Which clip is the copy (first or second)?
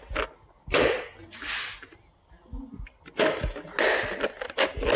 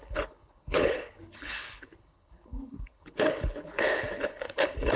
second